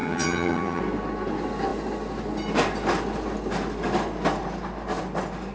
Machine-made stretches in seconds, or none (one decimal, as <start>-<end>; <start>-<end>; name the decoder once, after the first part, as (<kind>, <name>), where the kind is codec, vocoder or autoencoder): 0.0-0.8 (vocoder, HiFi-GAN)